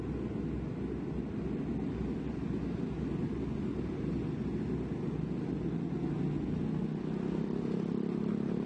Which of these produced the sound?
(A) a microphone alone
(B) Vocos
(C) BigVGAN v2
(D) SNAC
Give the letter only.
A